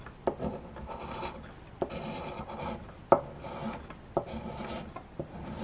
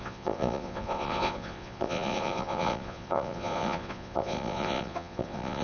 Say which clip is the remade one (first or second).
second